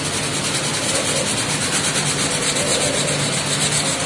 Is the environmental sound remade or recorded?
recorded